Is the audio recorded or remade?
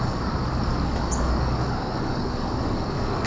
remade